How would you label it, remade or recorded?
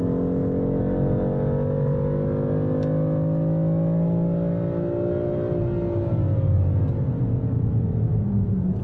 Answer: recorded